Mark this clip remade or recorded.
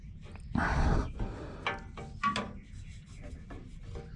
recorded